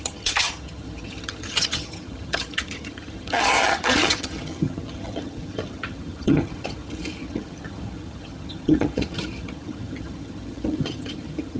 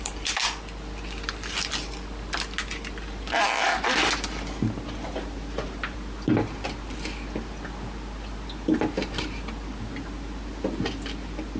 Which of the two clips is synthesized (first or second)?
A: first